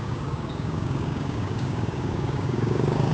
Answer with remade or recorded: remade